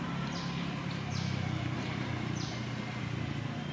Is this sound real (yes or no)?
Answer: yes